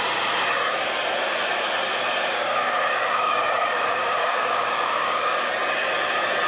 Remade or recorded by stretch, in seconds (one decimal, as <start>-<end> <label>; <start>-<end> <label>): 0.0-2.3 recorded; 2.3-5.5 remade; 5.5-6.5 recorded